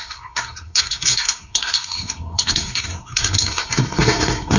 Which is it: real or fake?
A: fake